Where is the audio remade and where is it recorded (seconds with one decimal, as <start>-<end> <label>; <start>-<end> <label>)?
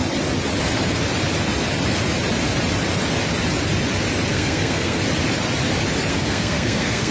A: 0.0-4.3 recorded; 4.3-5.0 remade; 5.0-6.1 recorded; 6.1-7.1 remade